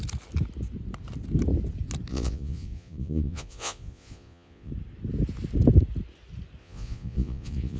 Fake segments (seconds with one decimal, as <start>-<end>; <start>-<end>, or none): 2.1-4.7; 6.6-7.8